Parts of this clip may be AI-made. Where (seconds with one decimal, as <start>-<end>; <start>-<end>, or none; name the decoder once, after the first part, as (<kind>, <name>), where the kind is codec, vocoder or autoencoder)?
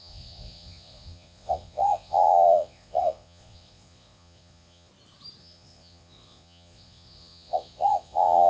0.0-4.9 (vocoder, Vocos); 5.4-8.5